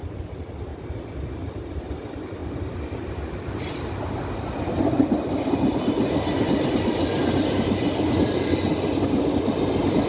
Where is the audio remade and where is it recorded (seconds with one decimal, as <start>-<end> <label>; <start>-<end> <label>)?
0.0-10.1 recorded